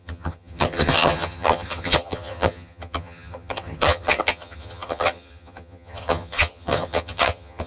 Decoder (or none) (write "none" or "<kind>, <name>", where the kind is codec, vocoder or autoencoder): vocoder, HiFi-GAN